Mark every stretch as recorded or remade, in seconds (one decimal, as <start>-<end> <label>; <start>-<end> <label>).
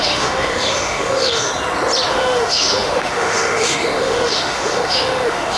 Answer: 0.0-1.5 remade; 1.5-2.1 recorded; 2.1-5.6 remade